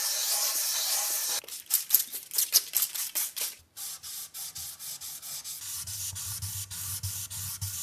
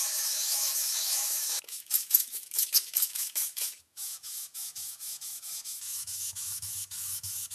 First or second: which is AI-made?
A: second